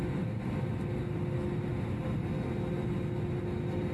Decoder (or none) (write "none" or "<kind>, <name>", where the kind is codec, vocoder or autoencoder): none